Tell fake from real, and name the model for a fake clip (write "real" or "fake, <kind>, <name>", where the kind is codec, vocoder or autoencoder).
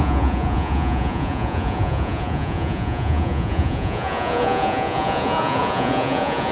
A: fake, vocoder, Vocos